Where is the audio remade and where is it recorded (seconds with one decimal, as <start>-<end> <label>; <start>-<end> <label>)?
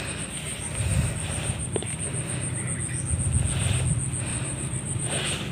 0.0-4.3 recorded; 4.3-5.1 remade; 5.1-5.5 recorded